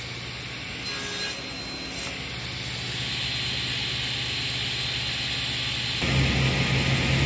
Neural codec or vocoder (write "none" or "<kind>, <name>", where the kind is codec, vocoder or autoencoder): none